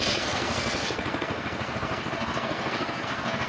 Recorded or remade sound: remade